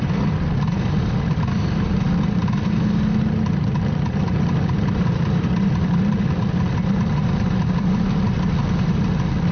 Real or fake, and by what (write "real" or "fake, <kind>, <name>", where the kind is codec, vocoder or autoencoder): real